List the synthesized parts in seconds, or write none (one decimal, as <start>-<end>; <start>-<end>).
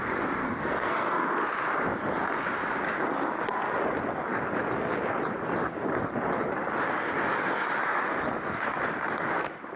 0.4-1.3